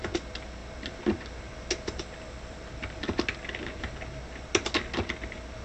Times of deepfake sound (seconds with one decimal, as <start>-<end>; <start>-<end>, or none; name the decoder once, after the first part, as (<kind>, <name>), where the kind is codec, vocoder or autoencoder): none